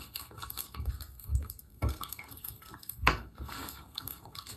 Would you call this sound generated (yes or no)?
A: yes